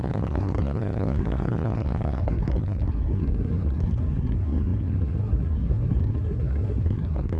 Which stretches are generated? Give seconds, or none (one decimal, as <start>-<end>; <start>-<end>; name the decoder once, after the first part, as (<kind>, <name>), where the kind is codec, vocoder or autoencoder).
0.0-7.4 (codec, SNAC)